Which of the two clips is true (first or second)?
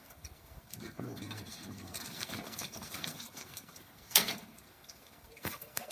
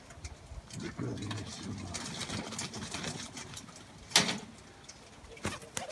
second